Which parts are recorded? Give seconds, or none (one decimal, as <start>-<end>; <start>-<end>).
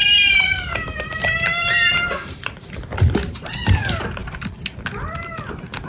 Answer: 3.5-4.2; 5.5-5.9